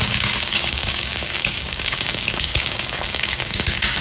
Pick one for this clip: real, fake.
fake